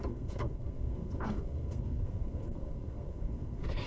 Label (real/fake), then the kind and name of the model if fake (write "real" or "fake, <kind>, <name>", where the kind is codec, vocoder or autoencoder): fake, codec, SNAC